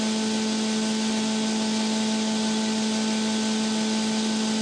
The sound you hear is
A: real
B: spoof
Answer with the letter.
A